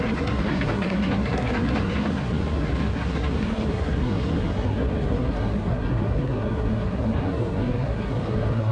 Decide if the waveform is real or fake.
fake